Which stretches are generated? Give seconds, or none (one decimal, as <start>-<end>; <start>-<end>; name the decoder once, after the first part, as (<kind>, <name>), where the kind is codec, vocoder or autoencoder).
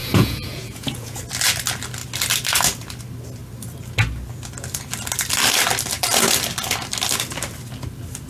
0.0-1.2 (vocoder, Vocos)